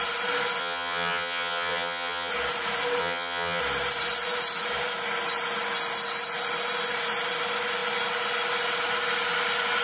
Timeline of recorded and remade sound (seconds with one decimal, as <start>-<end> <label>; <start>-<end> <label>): 0.0-0.6 recorded; 0.6-2.3 remade; 2.3-3.0 recorded; 3.0-3.6 remade; 3.6-9.8 recorded